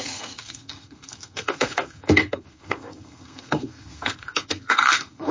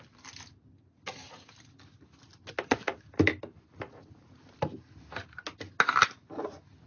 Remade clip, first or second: first